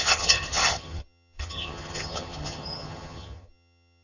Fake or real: fake